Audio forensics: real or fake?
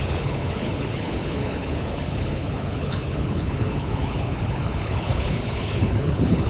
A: fake